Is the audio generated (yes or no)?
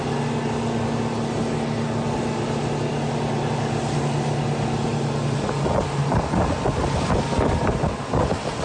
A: no